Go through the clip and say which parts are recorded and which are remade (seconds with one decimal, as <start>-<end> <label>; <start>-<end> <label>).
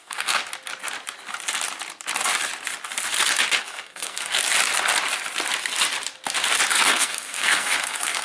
0.0-0.4 remade; 0.4-3.6 recorded; 3.6-4.4 remade; 4.4-6.7 recorded; 6.7-8.2 remade